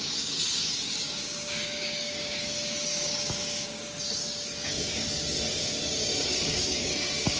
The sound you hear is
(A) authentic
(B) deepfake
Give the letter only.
B